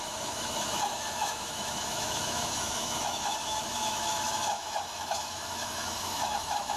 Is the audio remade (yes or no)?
yes